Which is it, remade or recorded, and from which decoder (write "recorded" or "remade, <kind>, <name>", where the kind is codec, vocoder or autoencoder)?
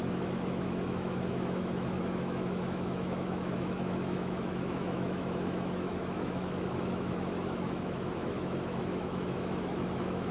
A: remade, autoencoder, DAC-VAE